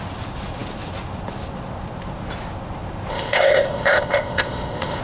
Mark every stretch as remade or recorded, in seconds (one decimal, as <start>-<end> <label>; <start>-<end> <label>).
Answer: 0.0-3.1 recorded; 3.1-5.0 remade